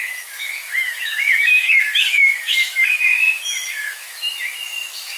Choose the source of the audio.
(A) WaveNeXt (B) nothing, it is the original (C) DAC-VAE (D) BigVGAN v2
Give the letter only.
C